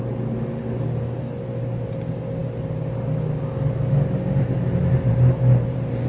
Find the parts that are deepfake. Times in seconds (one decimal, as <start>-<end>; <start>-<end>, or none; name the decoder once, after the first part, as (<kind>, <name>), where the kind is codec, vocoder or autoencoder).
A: none